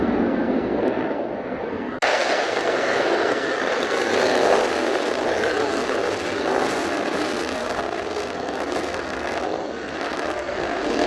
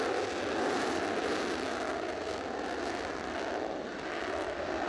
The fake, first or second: first